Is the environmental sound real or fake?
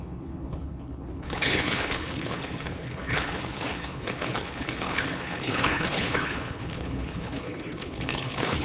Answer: fake